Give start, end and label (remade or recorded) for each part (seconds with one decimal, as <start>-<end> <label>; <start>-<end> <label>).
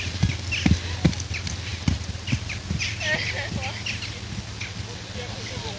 0.0-1.7 recorded; 1.7-4.3 remade; 4.3-5.8 recorded